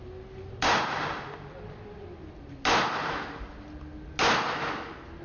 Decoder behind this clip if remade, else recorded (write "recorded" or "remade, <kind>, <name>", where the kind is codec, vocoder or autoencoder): recorded